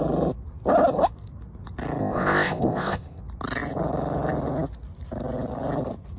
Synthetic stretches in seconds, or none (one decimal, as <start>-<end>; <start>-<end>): 2.0-3.2